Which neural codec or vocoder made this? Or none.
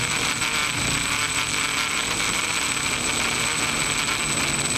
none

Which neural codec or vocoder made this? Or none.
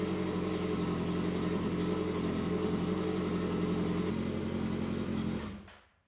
none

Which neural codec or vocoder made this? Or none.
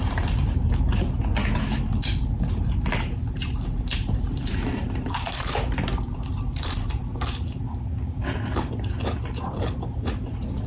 vocoder, BigVGAN v2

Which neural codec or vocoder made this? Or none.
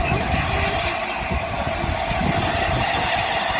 none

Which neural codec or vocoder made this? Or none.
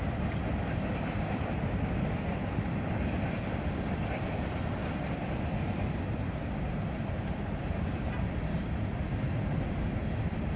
vocoder, BigVGAN v2